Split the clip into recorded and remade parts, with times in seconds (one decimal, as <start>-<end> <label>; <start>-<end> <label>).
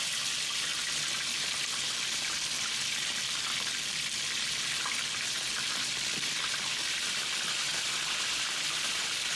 0.0-7.7 recorded; 7.7-9.4 remade